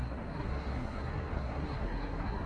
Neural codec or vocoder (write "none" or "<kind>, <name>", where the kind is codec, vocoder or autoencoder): codec, SNAC